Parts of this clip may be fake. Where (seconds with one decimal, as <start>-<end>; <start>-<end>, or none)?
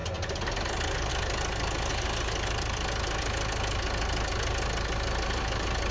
none